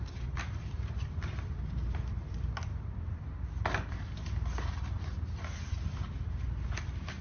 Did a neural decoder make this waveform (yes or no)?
no